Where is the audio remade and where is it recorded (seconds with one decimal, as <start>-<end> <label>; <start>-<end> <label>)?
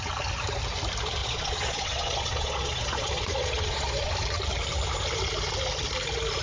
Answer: 0.0-1.2 recorded; 1.2-4.1 remade; 4.1-6.4 recorded